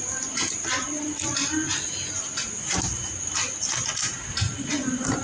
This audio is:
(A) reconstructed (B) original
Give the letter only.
B